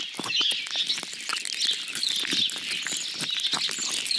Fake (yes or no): no